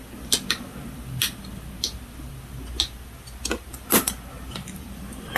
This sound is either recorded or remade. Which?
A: recorded